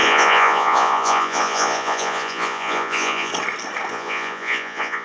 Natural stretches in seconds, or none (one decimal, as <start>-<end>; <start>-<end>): 3.3-3.9